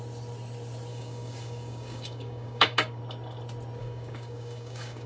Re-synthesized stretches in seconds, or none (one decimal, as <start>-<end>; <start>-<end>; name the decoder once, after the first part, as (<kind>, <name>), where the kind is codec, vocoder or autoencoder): 0.9-3.0 (codec, DAC); 3.8-5.1